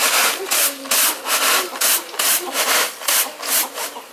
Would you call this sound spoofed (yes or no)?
no